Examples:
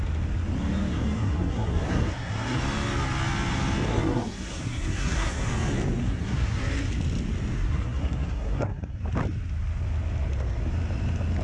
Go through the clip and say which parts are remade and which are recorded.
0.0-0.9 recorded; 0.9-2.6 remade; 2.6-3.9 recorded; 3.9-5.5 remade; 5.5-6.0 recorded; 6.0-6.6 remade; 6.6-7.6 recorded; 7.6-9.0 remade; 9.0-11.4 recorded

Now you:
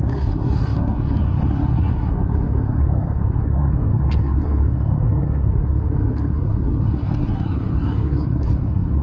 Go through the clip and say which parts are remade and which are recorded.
0.0-9.0 remade

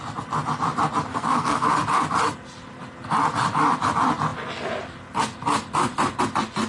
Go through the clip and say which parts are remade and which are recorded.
0.0-1.1 recorded; 1.1-1.7 remade; 1.7-6.7 recorded

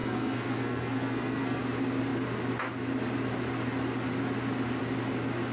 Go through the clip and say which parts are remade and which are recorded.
0.0-1.6 remade; 1.6-5.5 recorded